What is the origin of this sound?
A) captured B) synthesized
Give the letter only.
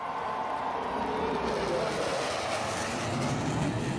A